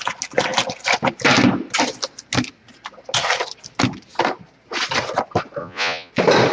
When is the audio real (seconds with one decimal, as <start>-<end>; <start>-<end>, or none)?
0.0-5.6; 6.1-6.5